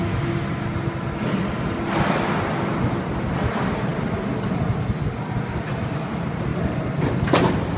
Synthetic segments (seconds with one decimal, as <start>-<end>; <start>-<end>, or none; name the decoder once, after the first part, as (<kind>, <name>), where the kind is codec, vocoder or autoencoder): none